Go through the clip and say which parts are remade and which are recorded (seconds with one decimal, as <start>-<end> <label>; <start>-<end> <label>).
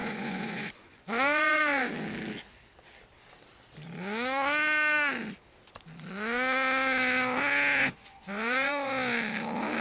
0.0-1.9 remade; 1.9-7.8 recorded; 7.8-8.9 remade; 8.9-9.8 recorded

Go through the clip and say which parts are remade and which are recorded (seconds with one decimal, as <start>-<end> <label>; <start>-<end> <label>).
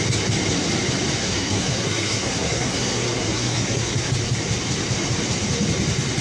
0.0-1.2 recorded; 1.2-4.1 remade; 4.1-6.2 recorded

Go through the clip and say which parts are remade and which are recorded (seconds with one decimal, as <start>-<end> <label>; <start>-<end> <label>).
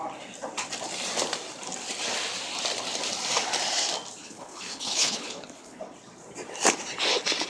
0.0-4.2 recorded; 4.2-5.8 remade; 5.8-7.5 recorded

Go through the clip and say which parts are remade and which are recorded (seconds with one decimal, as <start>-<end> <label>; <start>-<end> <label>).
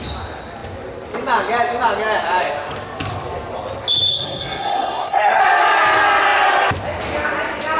0.0-4.1 recorded; 4.1-5.4 remade; 5.4-7.8 recorded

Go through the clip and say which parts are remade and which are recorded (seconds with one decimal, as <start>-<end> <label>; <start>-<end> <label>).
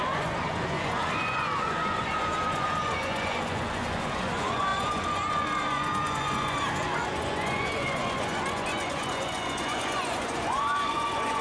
0.0-11.4 remade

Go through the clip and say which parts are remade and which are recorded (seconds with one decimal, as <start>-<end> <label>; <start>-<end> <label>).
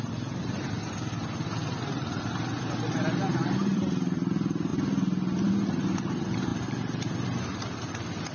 0.0-3.4 recorded; 3.4-4.3 remade; 4.3-8.3 recorded